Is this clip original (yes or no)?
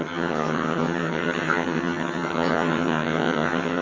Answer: no